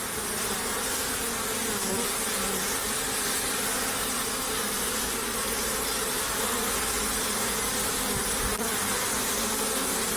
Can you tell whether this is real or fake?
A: real